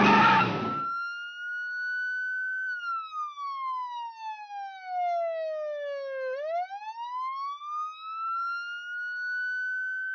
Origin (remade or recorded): recorded